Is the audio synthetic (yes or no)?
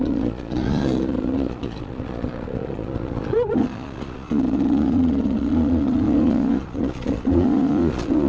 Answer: yes